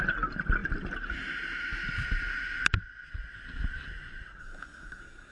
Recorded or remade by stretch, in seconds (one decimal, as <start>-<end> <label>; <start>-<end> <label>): 0.0-4.4 recorded; 4.4-5.3 remade